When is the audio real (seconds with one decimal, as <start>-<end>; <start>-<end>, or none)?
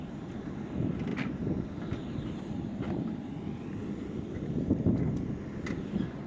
0.0-1.1; 4.9-6.3